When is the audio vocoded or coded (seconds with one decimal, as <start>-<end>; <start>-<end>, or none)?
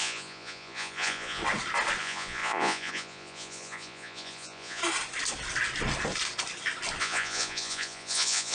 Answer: 0.0-1.4; 2.0-4.8; 7.0-8.5